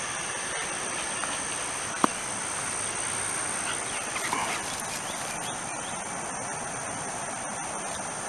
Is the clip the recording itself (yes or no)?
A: yes